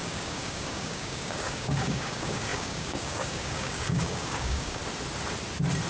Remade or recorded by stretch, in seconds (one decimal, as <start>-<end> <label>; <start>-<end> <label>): 0.0-4.8 remade; 4.8-5.9 recorded

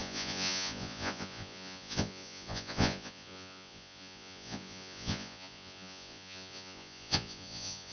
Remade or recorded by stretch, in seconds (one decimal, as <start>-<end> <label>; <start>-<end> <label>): 0.0-7.9 remade

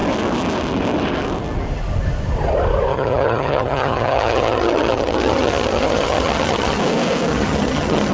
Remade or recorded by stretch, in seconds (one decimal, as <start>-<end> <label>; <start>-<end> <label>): 0.0-2.9 recorded; 2.9-6.8 remade; 6.8-7.3 recorded; 7.3-8.1 remade

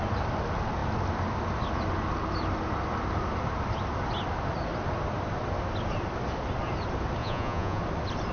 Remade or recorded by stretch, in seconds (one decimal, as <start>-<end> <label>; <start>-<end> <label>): 0.0-7.2 recorded; 7.2-7.8 remade; 7.8-8.3 recorded